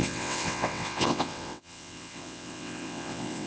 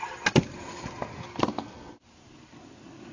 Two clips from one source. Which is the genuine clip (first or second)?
second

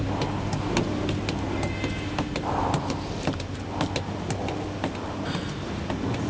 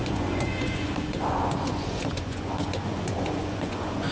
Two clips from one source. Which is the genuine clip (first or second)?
first